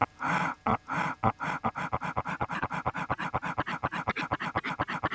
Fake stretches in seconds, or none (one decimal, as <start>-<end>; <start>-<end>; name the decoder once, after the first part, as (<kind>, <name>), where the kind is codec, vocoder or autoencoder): none